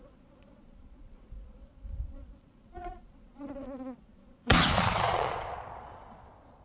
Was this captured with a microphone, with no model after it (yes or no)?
no